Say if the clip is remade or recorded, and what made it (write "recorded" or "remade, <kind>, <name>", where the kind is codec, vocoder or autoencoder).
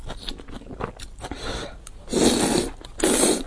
recorded